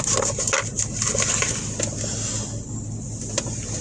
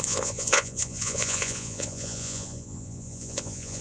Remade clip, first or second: second